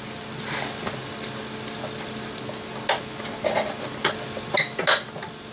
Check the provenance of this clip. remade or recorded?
recorded